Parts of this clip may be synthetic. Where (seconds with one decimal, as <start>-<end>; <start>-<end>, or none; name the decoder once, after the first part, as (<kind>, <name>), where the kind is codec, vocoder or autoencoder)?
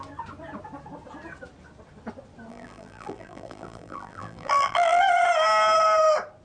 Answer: 2.5-5.0 (vocoder, BigVGAN v2)